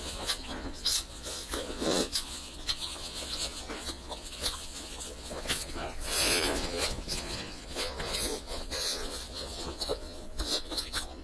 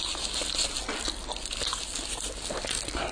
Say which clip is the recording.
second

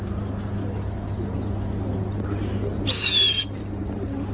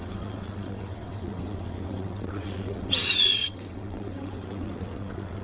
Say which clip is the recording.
first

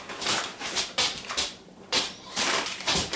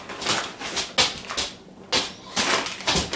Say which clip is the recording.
second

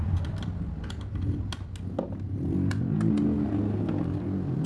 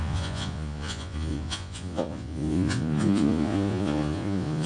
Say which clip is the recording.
first